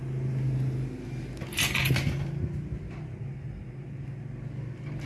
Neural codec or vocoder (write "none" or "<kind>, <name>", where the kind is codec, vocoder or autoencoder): none